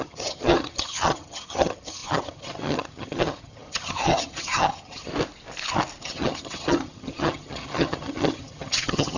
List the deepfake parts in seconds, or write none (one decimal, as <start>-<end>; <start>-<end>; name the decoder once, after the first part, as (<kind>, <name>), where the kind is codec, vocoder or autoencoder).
0.0-5.1 (vocoder, HiFi-GAN); 6.0-9.2